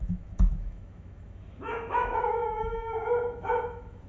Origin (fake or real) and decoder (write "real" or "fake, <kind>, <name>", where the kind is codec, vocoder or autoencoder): fake, autoencoder, DAC-VAE